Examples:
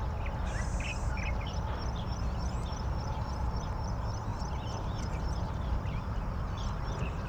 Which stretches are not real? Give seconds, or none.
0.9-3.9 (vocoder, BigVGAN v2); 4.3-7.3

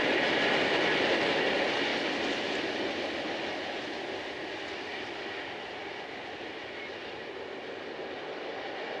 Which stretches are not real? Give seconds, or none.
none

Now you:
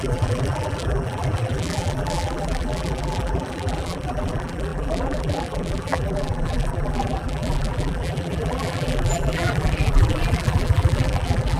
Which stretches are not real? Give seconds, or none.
0.0-11.6 (vocoder, BigVGAN v2)

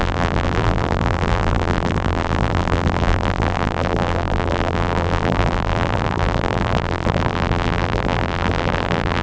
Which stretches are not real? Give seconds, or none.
0.0-9.2 (vocoder, BigVGAN v2)

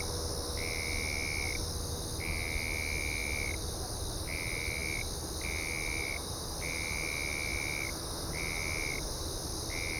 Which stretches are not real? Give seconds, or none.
none